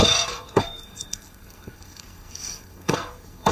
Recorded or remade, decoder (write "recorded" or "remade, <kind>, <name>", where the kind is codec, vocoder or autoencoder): remade, codec, SNAC